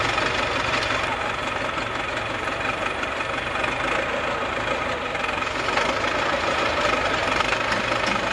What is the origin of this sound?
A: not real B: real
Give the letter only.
B